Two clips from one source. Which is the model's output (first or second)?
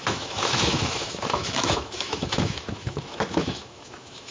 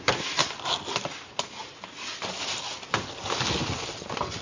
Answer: first